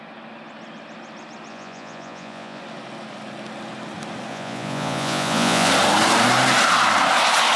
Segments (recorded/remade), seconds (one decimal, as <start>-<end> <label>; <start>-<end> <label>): 0.0-1.5 recorded; 1.5-2.6 remade; 2.6-4.3 recorded; 4.3-5.7 remade; 5.7-7.6 recorded